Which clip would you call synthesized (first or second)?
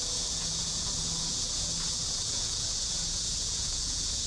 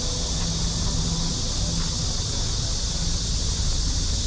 first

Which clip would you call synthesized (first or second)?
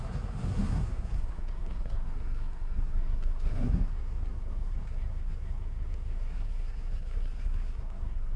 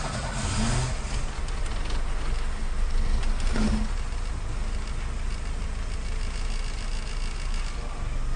first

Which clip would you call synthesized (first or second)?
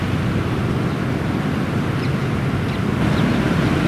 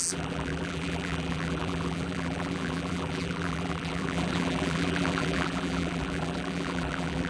second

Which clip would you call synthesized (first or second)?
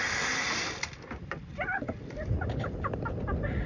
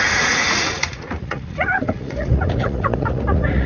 second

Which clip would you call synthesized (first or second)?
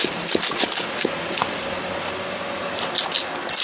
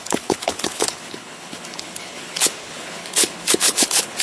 second